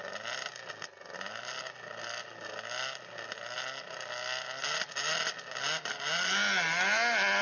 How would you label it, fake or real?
real